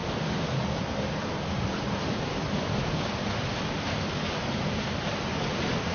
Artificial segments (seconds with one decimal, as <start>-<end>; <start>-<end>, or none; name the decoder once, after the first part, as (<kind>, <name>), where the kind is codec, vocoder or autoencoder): none